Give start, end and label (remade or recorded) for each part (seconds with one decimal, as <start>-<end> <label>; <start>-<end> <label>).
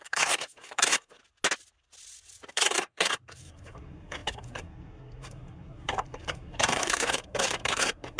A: 0.0-1.2 remade; 1.2-2.5 recorded; 2.5-8.2 remade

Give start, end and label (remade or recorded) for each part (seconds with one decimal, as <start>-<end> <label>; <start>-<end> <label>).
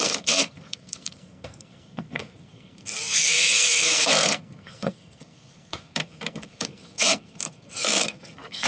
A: 0.0-8.7 remade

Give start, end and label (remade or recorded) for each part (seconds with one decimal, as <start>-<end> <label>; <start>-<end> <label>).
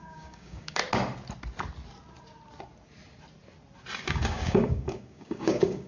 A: 0.0-0.8 remade; 0.8-4.1 recorded; 4.1-5.9 remade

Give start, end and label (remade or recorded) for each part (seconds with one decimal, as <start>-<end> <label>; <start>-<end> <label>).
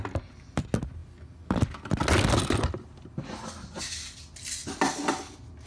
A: 0.0-5.7 recorded